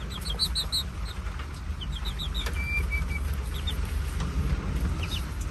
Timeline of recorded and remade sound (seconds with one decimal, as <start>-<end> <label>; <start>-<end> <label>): 0.0-5.5 recorded